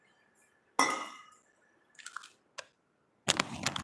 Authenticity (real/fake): real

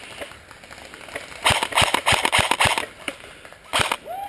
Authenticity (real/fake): fake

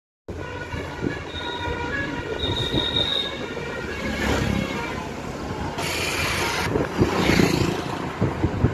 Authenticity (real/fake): real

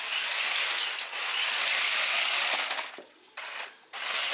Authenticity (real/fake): real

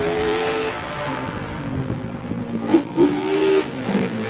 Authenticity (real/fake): fake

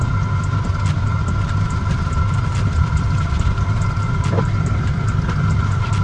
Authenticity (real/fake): fake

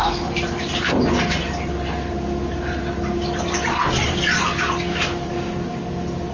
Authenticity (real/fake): real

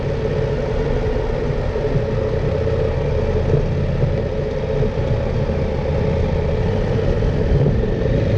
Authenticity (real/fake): real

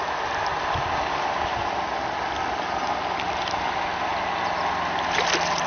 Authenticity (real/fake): real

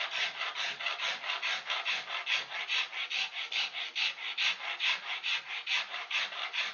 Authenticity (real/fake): real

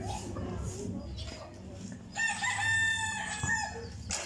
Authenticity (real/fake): real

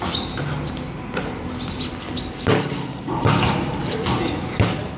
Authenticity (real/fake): real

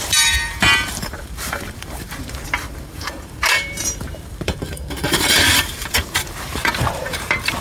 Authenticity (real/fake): fake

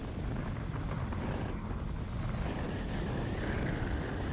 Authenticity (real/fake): real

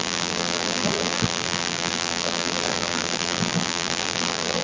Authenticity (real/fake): fake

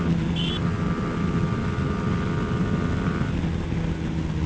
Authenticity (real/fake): real